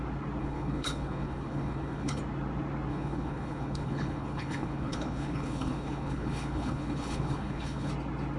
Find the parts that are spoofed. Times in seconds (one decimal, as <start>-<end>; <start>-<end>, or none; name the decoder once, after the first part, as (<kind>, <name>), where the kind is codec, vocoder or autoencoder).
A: 0.4-2.2 (codec, HILCodec); 2.9-7.9